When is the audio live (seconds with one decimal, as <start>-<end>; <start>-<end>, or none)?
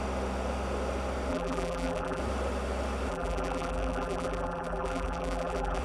0.0-1.3; 2.2-3.1